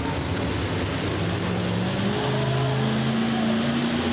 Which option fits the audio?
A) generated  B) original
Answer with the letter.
B